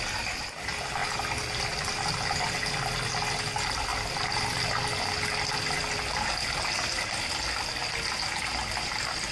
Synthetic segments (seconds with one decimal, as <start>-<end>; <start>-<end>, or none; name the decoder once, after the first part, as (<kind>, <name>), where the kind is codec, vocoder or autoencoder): none